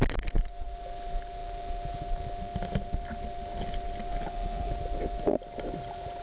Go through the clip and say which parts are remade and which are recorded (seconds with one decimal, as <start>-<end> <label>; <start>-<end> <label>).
0.0-4.1 recorded; 4.1-4.7 remade; 4.7-6.2 recorded